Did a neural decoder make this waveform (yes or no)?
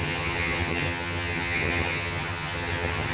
yes